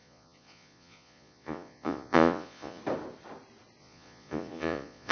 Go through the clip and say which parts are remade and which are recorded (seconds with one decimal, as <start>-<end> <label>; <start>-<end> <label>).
0.0-2.8 remade; 2.8-3.8 recorded; 3.8-5.1 remade